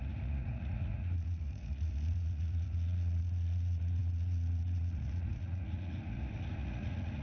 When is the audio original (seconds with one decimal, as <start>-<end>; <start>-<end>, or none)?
none